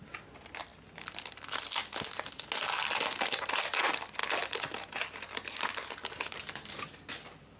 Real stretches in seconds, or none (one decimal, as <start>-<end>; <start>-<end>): 0.0-7.6